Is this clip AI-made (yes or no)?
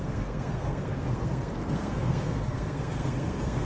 yes